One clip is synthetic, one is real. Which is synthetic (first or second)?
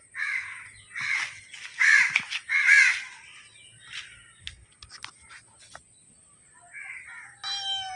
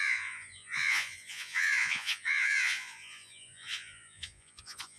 second